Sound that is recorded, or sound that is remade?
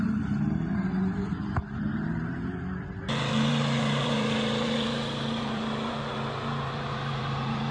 remade